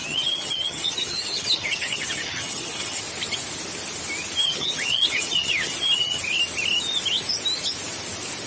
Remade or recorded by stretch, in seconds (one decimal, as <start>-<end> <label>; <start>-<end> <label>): 0.0-3.0 remade; 3.0-4.4 recorded; 4.4-6.2 remade; 6.2-8.5 recorded